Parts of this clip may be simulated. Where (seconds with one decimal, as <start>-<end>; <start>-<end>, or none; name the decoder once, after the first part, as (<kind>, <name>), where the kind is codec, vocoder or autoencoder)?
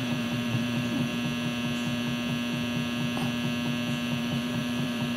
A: 0.0-1.1 (vocoder, BigVGAN v2); 4.2-5.2